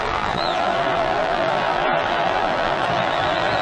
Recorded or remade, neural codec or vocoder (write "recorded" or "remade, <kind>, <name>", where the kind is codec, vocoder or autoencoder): remade, vocoder, BigVGAN v2